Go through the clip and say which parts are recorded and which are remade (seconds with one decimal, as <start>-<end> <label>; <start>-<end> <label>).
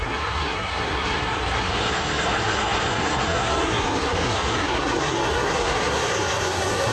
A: 0.0-6.9 remade